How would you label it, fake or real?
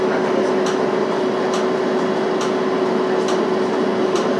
real